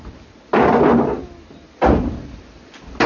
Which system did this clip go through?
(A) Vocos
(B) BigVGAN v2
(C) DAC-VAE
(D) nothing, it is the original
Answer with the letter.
D